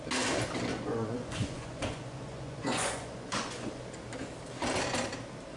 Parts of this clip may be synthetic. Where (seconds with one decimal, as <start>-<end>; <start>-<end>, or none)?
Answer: 0.7-3.8

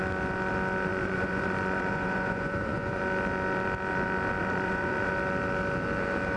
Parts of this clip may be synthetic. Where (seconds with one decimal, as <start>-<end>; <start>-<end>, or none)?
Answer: 0.9-3.0; 4.4-5.1

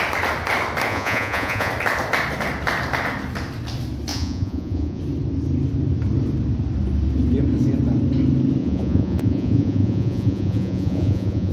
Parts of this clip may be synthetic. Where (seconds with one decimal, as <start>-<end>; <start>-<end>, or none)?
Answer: 0.9-1.7; 4.1-5.0; 8.6-11.5

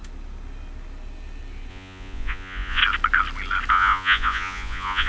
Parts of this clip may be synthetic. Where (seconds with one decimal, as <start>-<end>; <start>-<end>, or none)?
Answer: 1.7-2.8; 3.7-5.1

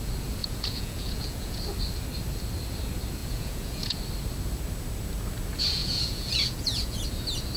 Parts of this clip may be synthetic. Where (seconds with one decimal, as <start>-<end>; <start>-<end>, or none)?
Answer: 0.4-1.6; 3.2-4.0; 5.8-7.0

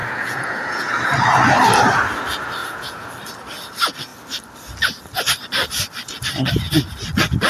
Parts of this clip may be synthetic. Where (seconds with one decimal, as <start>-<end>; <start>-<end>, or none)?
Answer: 0.0-0.9; 2.6-3.1

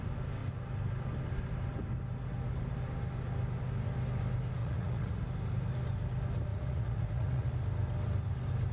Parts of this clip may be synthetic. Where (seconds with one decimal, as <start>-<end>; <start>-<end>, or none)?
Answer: 4.6-5.2; 6.5-7.5